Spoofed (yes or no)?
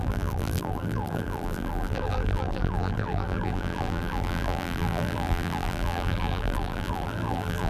yes